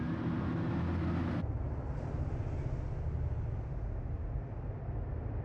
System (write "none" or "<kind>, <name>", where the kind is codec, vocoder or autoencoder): none